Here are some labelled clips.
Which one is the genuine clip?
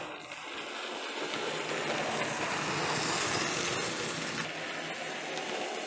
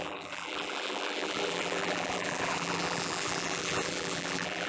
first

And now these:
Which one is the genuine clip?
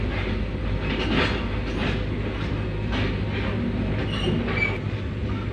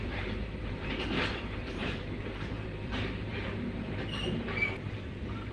first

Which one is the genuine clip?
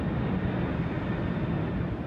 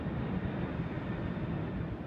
first